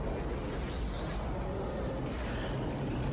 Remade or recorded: recorded